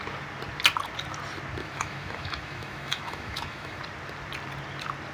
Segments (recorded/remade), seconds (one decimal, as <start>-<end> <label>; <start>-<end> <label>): 0.0-1.6 recorded; 1.6-3.8 remade; 3.8-5.1 recorded